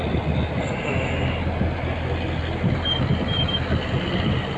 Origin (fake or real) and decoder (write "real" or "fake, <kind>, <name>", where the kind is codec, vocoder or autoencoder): real